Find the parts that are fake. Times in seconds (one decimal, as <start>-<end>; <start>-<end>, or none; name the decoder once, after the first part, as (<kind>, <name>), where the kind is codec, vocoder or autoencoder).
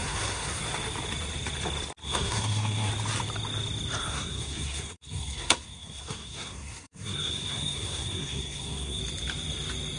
0.0-0.6 (codec, SNAC); 2.0-2.9; 4.0-9.0